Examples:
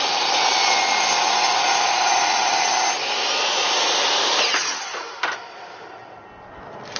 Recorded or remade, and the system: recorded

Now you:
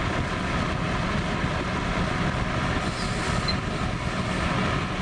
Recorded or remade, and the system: recorded